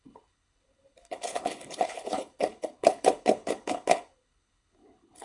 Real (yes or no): no